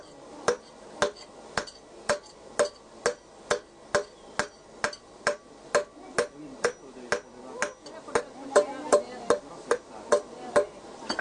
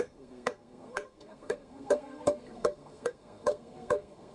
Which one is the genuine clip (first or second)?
first